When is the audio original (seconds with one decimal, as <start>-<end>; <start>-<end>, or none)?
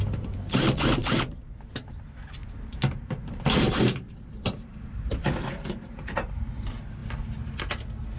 0.0-2.4; 6.3-7.0; 7.6-8.2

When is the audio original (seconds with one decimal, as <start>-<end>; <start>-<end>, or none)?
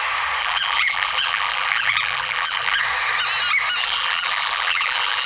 0.0-0.4; 2.8-3.8